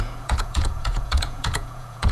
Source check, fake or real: fake